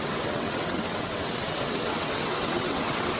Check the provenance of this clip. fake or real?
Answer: fake